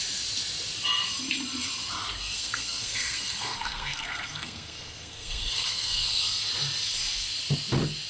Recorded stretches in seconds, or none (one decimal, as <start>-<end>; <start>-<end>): 0.0-2.2; 6.5-8.1